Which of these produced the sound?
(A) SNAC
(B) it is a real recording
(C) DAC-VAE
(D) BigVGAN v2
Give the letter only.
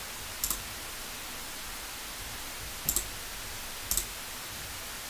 B